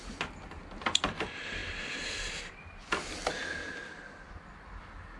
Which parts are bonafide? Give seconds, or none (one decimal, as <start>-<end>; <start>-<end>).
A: 0.0-5.2